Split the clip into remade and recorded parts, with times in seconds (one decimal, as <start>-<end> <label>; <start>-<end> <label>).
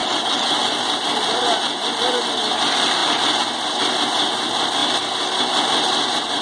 0.0-0.5 remade; 0.5-6.4 recorded